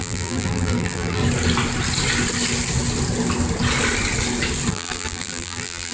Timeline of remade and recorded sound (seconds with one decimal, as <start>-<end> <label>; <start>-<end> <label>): 0.0-1.2 remade; 1.2-4.7 recorded; 4.7-5.9 remade